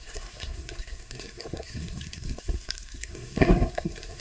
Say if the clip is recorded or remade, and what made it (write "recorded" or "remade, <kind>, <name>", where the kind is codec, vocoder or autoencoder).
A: remade, codec, SNAC